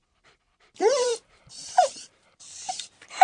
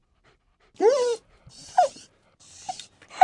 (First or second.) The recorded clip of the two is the second